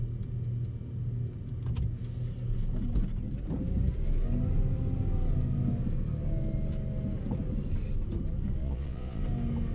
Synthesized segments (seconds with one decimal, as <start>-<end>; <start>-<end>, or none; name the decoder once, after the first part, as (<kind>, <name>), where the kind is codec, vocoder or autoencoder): 8.6-9.2 (vocoder, Vocos)